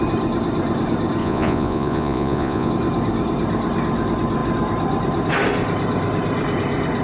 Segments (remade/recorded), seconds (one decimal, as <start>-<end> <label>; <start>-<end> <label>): 0.0-1.2 recorded; 1.2-2.7 remade; 2.7-7.0 recorded